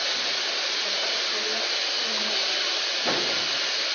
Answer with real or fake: real